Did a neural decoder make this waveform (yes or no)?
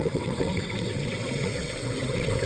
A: yes